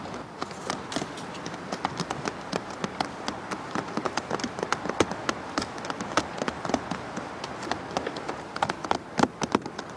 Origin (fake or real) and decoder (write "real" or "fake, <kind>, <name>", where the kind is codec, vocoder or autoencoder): real